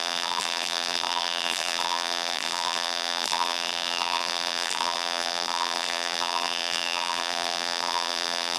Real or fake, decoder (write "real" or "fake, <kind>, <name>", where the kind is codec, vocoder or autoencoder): fake, vocoder, BigVGAN v2